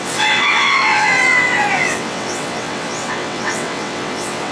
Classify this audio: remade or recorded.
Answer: remade